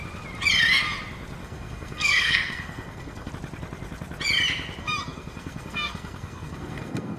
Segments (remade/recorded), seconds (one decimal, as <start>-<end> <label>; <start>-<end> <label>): 0.0-1.4 recorded; 1.4-3.3 remade; 3.3-4.8 recorded; 4.8-7.2 remade